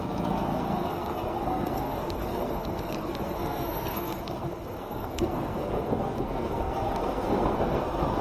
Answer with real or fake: fake